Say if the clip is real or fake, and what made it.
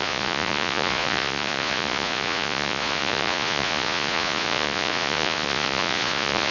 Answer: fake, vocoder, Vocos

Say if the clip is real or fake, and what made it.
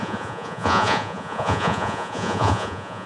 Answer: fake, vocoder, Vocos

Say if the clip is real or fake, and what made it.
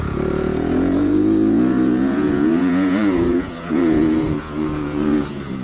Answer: fake, vocoder, Vocos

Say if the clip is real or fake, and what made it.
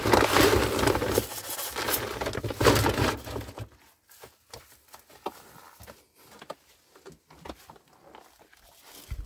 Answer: real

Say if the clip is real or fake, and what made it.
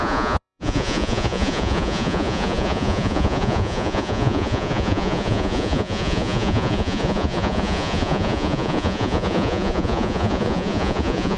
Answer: fake, vocoder, Vocos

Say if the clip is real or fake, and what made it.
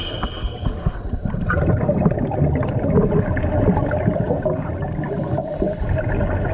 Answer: real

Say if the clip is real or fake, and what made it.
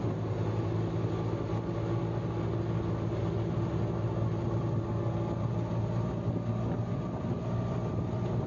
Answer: real